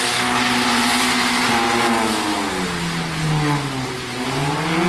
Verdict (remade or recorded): recorded